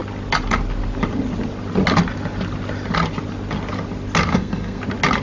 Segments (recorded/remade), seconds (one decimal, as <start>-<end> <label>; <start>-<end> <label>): 0.0-4.3 recorded; 4.3-4.8 remade; 4.8-5.2 recorded